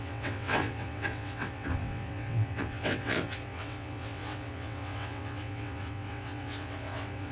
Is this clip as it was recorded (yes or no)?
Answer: no